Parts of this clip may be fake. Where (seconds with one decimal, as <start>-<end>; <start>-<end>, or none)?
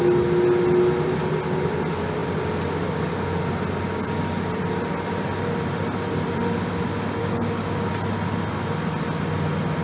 7.2-7.9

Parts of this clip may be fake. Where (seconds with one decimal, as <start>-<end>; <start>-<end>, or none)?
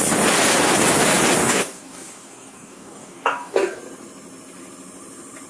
1.4-3.8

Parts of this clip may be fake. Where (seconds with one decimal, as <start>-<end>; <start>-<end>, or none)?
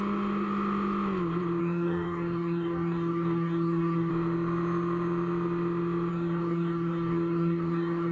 1.6-4.1; 6.1-8.1